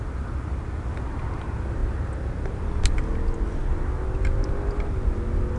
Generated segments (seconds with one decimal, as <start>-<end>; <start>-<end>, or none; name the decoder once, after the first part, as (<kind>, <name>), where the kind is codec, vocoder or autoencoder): none